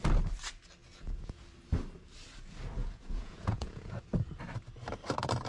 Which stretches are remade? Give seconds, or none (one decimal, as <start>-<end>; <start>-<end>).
0.8-1.4; 2.8-4.0